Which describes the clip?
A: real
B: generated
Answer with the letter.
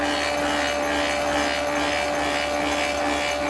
A